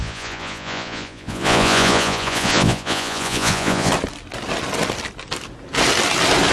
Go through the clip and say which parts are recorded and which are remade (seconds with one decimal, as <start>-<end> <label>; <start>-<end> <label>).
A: 0.0-3.9 remade; 3.9-6.5 recorded